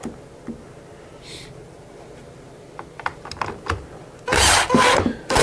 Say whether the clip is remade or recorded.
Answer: recorded